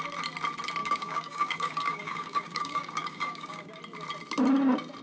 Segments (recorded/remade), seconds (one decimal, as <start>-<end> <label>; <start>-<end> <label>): 0.0-0.8 recorded; 0.8-3.8 remade; 3.8-5.0 recorded